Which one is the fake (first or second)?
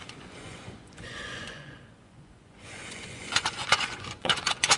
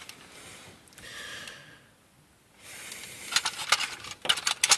first